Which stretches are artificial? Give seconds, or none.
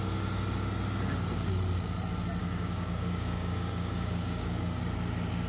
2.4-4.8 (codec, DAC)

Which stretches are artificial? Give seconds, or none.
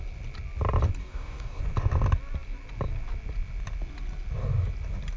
1.0-1.6 (codec, DAC)